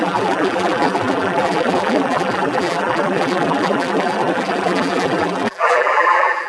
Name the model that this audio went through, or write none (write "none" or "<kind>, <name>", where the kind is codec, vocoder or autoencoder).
vocoder, BigVGAN v2